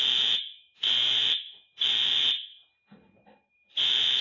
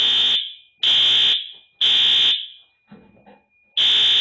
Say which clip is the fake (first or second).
first